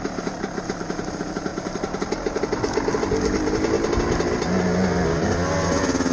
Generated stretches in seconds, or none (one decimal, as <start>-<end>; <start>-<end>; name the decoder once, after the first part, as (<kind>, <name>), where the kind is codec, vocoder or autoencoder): 1.5-2.1 (vocoder, BigVGAN v2)